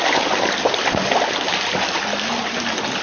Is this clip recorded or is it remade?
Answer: recorded